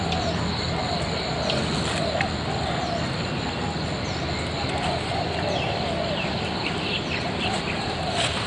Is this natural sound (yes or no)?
yes